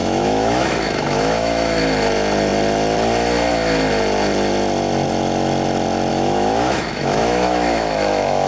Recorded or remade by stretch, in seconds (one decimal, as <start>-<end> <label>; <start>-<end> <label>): 0.0-1.8 remade; 1.8-6.1 recorded; 6.1-8.5 remade